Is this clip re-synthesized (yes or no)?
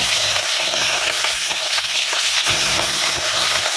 yes